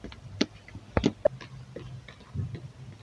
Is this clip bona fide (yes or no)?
yes